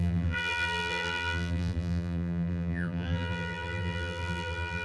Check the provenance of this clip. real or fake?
fake